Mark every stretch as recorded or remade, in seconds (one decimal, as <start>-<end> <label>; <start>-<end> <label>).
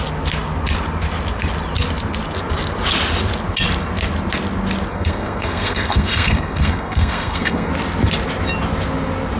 0.0-4.9 recorded; 4.9-7.7 remade; 7.7-9.4 recorded